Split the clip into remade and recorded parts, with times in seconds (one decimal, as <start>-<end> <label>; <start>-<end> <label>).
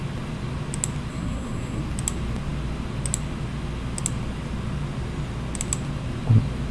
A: 0.0-1.1 recorded; 1.1-1.8 remade; 1.8-6.7 recorded